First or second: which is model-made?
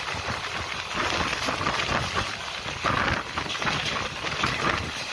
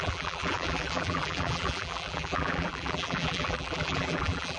second